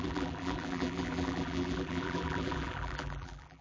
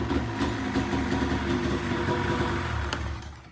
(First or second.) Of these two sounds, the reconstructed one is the first